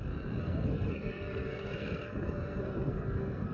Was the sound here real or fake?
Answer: fake